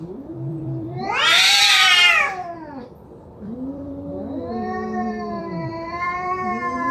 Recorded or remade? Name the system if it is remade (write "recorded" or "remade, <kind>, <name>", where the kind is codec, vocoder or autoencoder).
remade, vocoder, BigVGAN v2